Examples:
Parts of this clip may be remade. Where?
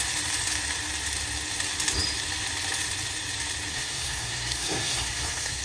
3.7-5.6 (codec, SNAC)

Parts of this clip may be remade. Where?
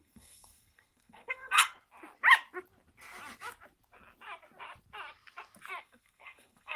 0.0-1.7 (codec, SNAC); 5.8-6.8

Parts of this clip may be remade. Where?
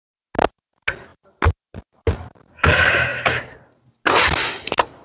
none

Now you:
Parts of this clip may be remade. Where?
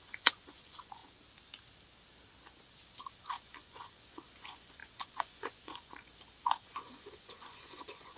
0.0-1.0 (vocoder, Vocos); 3.2-6.1; 6.6-8.2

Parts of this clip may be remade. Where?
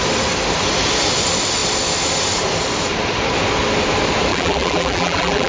4.3-5.5 (vocoder, BigVGAN v2)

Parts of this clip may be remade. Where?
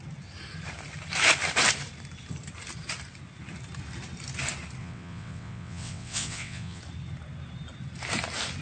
4.8-6.8 (vocoder, WaveNeXt)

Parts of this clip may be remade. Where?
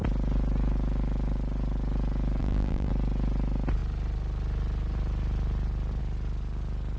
2.4-2.9 (vocoder, BigVGAN v2)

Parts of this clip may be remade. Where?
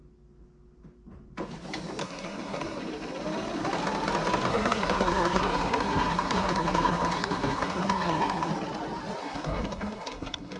2.0-2.8 (codec, SNAC); 4.5-8.5; 9.2-10.6